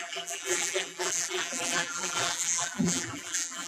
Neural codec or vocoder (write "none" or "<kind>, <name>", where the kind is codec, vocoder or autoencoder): vocoder, BigVGAN v2